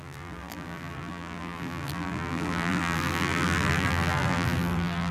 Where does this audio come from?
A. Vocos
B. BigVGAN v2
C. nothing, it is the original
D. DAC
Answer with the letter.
B